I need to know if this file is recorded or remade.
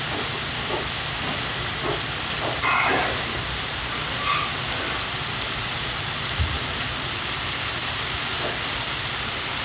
recorded